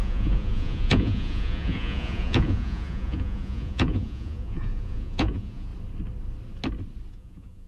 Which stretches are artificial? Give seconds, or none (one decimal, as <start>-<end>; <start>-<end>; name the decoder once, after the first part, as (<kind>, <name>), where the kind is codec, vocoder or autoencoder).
0.0-5.7 (vocoder, Vocos); 7.1-7.7